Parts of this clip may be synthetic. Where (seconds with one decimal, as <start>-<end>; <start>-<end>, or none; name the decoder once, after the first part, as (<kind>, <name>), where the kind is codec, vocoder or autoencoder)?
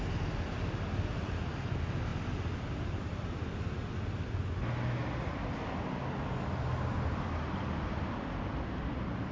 none